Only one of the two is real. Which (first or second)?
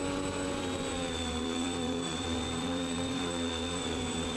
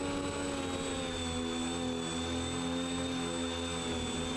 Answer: second